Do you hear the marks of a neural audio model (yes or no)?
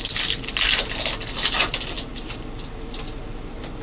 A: no